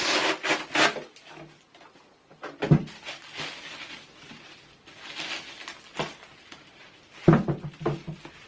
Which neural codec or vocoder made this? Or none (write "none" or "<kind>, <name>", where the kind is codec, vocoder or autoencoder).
none